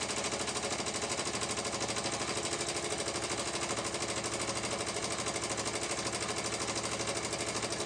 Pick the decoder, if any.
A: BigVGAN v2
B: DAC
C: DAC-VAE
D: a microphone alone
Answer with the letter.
D